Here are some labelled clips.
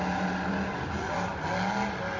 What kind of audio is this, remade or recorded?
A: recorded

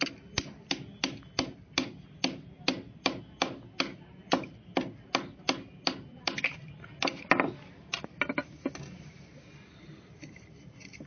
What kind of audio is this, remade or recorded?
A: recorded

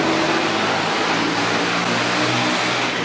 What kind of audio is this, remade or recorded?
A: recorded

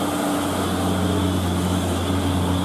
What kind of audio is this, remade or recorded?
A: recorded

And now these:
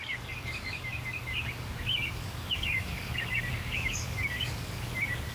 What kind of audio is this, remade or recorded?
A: remade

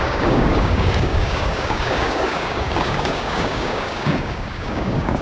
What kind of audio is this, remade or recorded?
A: remade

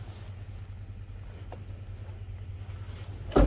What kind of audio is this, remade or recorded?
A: recorded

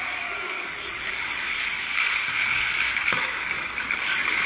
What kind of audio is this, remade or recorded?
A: remade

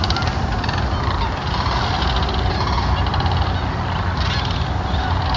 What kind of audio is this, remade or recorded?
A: recorded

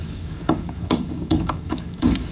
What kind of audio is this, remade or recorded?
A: remade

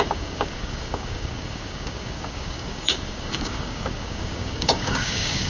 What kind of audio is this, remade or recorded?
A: remade